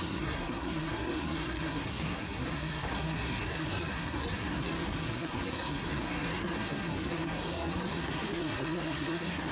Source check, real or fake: fake